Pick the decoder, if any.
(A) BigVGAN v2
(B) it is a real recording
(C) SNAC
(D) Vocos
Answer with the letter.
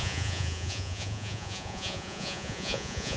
D